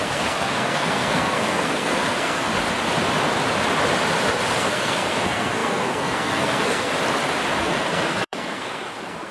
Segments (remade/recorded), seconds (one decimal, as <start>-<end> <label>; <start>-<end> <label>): 0.0-2.5 remade; 2.5-4.6 recorded; 4.6-6.9 remade; 6.9-7.6 recorded; 7.6-9.3 remade